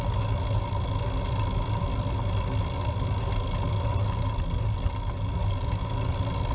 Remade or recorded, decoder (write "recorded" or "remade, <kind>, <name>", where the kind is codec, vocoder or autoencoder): recorded